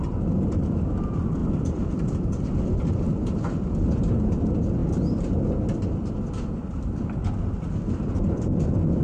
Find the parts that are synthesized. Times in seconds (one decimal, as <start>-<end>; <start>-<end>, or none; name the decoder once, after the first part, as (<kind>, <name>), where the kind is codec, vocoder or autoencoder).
1.4-3.9 (vocoder, BigVGAN v2); 4.8-7.6